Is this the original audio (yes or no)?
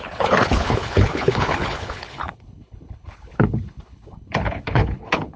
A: no